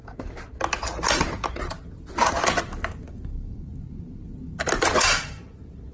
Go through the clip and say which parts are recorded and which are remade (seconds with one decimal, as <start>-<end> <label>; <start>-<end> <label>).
0.0-3.1 recorded; 3.1-3.7 remade; 3.7-5.9 recorded